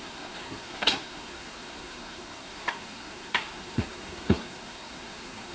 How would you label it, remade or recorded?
remade